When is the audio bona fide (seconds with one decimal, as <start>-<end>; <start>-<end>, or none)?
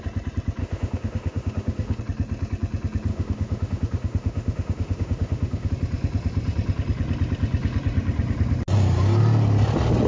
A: 0.0-0.6; 2.0-3.1; 5.7-10.1